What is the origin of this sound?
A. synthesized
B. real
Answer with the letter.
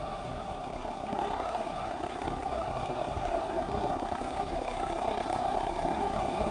A